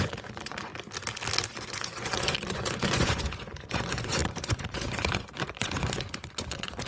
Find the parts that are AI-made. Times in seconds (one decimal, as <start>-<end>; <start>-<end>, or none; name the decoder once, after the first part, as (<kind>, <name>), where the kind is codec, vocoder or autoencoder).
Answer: 0.0-0.7 (vocoder, Vocos); 1.5-6.9